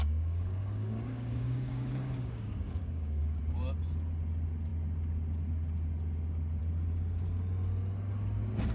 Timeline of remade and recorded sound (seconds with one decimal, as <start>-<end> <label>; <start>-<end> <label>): 0.0-3.4 remade; 3.4-8.7 recorded